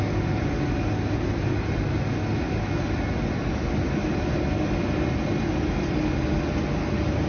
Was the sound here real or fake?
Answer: real